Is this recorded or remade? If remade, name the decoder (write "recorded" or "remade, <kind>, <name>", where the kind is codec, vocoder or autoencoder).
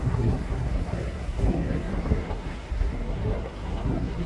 remade, codec, SNAC